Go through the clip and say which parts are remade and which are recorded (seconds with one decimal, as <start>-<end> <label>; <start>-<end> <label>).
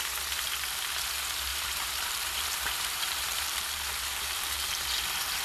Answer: 0.0-1.5 recorded; 1.5-4.7 remade; 4.7-5.4 recorded